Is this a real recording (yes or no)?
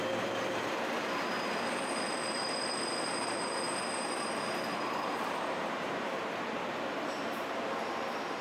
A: no